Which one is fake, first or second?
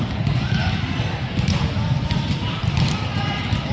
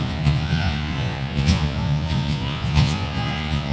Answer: second